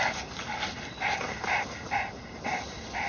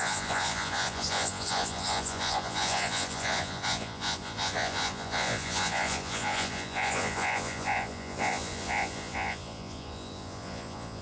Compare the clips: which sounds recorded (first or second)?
first